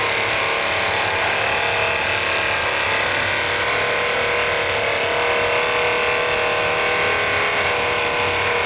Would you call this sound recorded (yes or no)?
yes